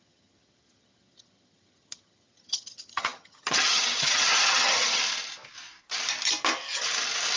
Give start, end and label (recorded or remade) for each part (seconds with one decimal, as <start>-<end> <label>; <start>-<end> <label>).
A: 0.0-5.0 remade; 5.0-7.4 recorded